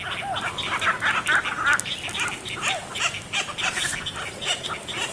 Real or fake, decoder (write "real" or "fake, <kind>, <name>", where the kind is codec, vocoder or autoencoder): real